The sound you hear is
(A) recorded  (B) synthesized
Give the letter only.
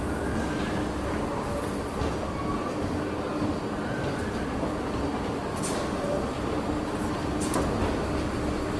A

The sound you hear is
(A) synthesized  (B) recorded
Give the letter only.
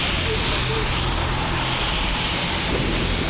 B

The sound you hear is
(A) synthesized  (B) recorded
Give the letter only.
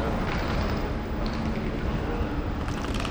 B